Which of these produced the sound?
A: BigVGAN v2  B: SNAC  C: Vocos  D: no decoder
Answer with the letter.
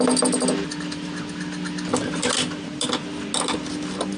D